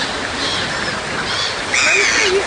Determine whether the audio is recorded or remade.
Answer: recorded